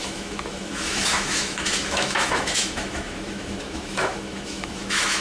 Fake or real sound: fake